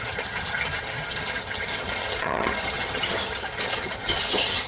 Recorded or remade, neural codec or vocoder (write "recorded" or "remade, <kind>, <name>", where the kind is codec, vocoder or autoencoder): remade, vocoder, HiFi-GAN